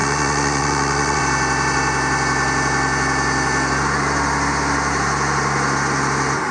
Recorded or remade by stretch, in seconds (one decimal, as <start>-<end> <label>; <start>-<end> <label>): 0.0-1.2 remade; 1.2-6.5 recorded